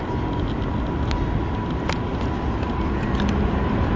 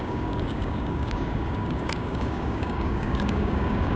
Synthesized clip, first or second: second